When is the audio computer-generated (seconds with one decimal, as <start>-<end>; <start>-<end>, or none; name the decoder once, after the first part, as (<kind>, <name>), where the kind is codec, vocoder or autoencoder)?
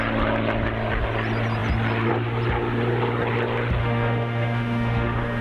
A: 3.8-5.4 (autoencoder, DAC-VAE)